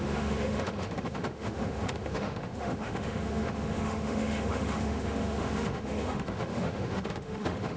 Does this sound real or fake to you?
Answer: fake